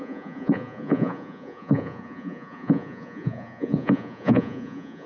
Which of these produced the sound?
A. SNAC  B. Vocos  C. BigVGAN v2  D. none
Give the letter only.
B